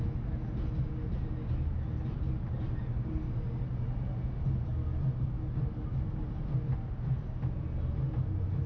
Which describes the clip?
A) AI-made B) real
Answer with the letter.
B